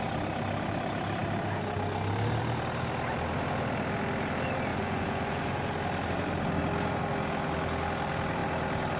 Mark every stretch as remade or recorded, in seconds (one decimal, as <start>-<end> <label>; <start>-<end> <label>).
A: 0.0-4.7 recorded; 4.7-5.7 remade; 5.7-9.0 recorded